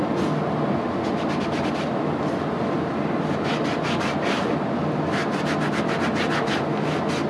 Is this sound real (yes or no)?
yes